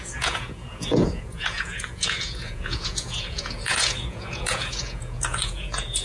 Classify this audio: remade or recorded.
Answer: remade